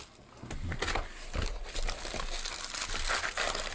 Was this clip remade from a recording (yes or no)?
no